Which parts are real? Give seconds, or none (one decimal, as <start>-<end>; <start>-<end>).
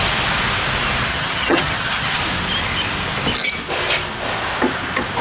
0.0-1.1; 2.2-5.2